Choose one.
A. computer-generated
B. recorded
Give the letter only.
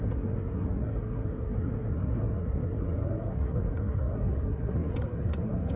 A